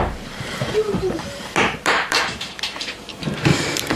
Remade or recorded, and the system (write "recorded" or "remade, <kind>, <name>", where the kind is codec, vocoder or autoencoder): remade, vocoder, BigVGAN v2